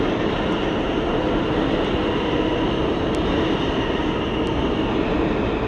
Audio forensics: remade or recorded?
recorded